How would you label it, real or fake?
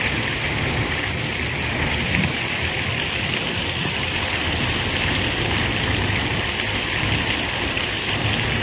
real